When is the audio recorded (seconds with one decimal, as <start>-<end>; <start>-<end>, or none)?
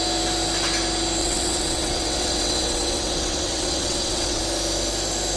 0.0-1.2; 4.4-5.4